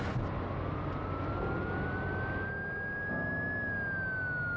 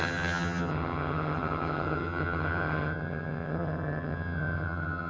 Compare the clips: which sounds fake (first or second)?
second